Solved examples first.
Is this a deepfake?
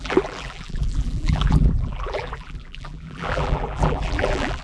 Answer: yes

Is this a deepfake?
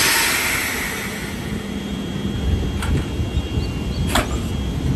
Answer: no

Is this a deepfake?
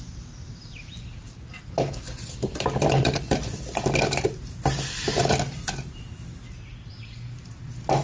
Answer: no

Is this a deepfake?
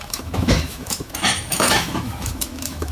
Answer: yes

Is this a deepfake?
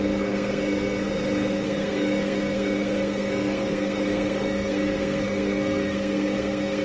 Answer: yes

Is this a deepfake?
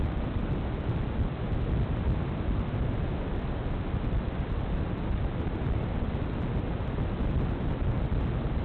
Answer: no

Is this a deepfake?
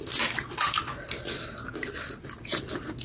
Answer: no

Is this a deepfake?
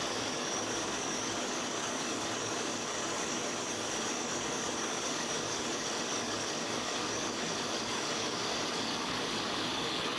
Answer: yes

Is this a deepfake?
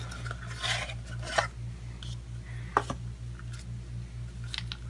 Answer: no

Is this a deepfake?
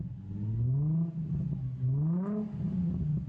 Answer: no